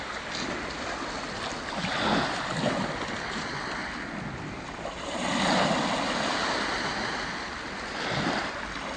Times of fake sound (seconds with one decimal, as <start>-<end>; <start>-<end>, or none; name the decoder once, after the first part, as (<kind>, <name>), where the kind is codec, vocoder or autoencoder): none